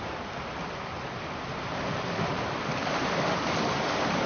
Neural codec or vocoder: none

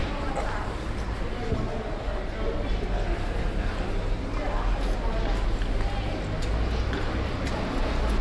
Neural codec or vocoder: none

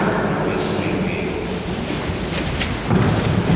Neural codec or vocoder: none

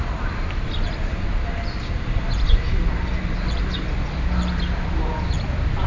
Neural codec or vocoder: none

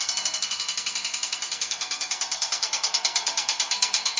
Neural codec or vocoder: codec, SNAC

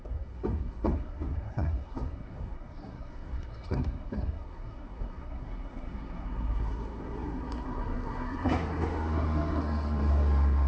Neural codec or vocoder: codec, SNAC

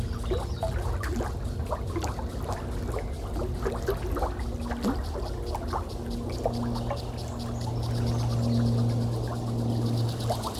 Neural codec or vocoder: none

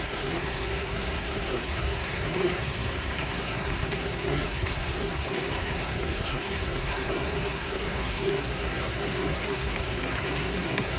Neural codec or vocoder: codec, SNAC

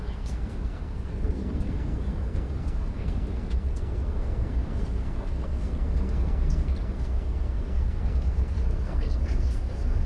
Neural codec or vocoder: codec, SNAC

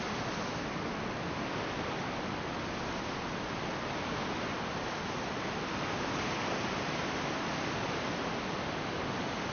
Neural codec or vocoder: none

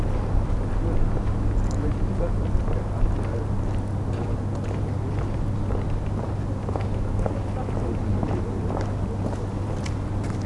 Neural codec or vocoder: none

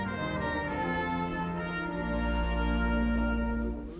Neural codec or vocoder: none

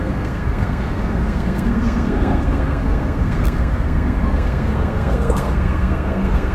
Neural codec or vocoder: codec, SNAC